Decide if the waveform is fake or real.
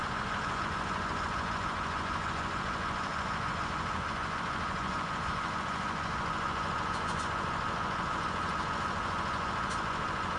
fake